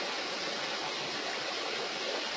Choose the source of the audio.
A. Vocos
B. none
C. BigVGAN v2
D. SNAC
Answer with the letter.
B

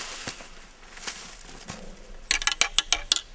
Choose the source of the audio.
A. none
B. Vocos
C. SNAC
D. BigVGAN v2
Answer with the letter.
A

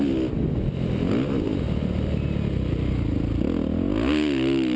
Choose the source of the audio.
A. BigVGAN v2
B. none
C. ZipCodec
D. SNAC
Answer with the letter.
B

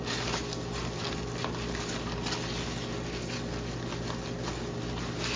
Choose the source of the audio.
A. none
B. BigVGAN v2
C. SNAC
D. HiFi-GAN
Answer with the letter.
A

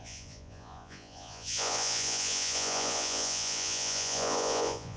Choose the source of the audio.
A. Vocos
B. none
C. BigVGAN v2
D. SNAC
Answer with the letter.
A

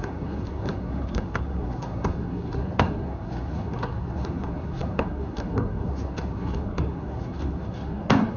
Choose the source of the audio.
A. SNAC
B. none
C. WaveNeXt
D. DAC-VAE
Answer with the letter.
A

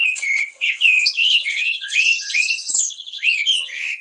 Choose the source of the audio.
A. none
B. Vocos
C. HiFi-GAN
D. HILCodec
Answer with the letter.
D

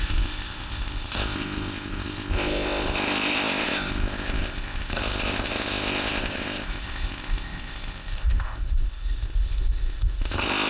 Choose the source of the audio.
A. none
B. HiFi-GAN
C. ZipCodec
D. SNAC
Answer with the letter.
C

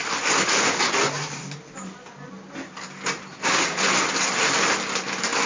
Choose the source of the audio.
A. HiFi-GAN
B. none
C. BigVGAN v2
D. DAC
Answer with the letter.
B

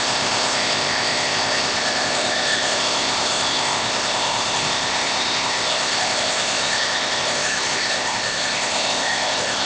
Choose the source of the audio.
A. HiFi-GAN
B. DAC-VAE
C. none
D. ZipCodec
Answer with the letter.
D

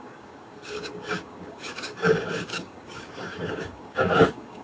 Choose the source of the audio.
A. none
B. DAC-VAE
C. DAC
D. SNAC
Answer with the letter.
C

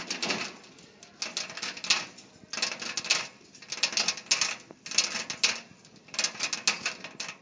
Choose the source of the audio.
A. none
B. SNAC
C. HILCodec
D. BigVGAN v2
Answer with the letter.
A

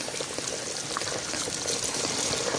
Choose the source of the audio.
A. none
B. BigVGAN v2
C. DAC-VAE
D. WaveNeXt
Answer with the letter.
A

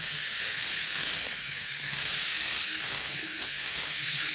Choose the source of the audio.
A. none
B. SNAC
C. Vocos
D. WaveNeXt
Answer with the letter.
B